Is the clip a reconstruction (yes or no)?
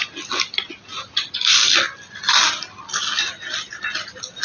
no